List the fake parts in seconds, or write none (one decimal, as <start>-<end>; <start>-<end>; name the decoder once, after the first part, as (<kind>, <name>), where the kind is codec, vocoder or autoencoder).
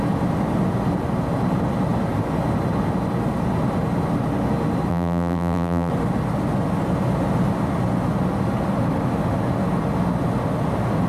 4.9-5.9 (vocoder, BigVGAN v2)